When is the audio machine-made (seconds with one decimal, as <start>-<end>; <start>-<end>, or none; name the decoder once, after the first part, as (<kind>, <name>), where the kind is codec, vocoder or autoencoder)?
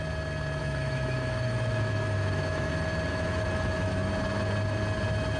0.6-2.7 (autoencoder, DAC-VAE); 3.1-4.1